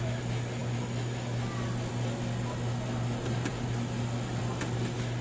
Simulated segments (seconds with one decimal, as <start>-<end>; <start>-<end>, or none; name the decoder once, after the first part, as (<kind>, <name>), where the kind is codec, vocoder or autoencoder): none